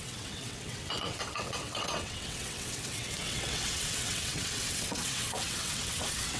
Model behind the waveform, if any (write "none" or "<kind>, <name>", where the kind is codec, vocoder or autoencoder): vocoder, WaveNeXt